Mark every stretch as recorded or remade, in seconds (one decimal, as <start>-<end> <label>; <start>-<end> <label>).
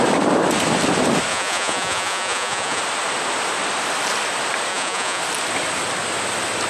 0.0-1.3 recorded; 1.3-2.8 remade; 2.8-4.7 recorded; 4.7-5.2 remade; 5.2-6.7 recorded